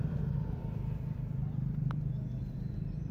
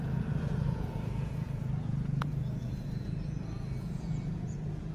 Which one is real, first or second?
first